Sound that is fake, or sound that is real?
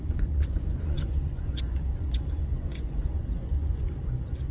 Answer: fake